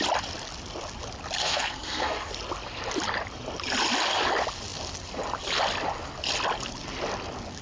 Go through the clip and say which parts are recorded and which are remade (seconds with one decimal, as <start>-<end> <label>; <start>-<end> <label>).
0.0-1.4 recorded; 1.4-2.3 remade; 2.3-7.6 recorded